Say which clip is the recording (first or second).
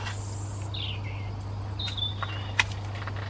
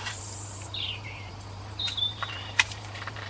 first